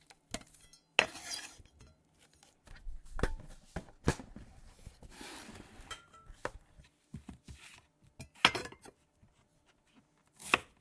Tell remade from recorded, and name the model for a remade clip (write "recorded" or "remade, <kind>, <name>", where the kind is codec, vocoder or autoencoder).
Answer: recorded